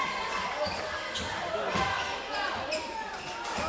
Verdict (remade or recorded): recorded